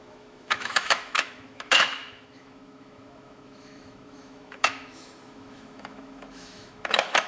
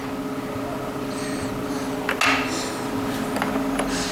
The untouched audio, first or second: second